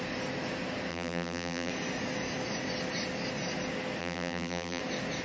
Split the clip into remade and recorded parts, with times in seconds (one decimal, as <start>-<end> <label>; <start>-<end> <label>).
0.0-0.9 recorded; 0.9-1.7 remade; 1.7-4.0 recorded; 4.0-4.8 remade; 4.8-5.2 recorded